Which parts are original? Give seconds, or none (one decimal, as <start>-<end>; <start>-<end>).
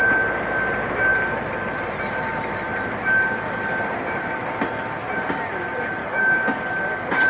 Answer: 0.0-6.0; 6.6-7.3